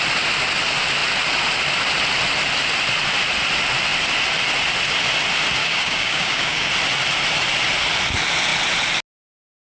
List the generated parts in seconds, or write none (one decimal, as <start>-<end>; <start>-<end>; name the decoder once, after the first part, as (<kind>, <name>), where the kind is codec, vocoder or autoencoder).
5.6-6.7 (codec, DAC)